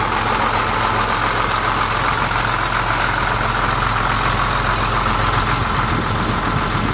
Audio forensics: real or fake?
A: real